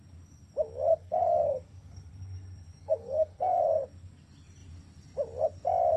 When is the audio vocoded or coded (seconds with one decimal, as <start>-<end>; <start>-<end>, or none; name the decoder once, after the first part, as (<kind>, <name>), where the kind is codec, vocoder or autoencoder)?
0.9-3.6 (codec, SNAC)